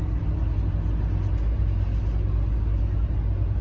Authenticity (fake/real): real